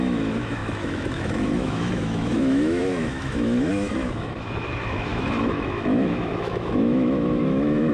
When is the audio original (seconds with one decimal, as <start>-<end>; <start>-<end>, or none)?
none